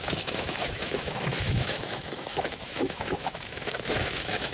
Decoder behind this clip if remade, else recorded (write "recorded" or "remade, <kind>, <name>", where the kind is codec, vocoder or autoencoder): remade, autoencoder, DAC-VAE